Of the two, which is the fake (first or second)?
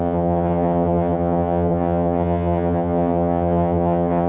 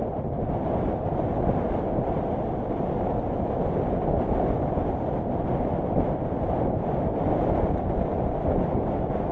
first